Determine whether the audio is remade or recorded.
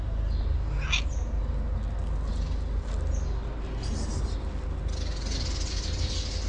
recorded